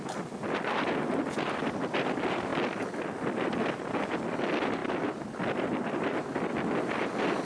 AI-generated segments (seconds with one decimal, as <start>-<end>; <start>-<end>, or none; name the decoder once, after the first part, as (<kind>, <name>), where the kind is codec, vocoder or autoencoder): none